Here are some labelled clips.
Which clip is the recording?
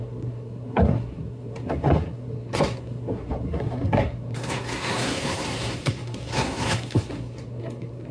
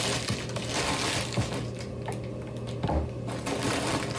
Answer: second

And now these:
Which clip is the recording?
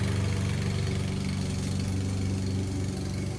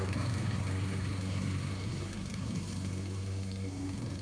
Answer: first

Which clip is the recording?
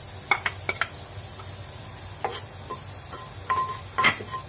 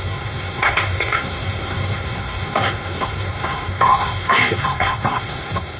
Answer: first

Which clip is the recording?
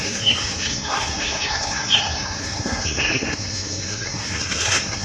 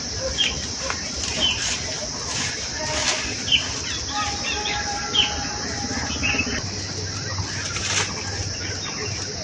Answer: second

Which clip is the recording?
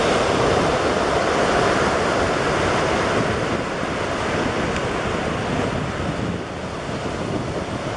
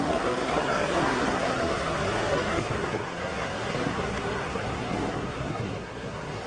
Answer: first